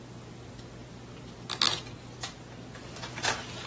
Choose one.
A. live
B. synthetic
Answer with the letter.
A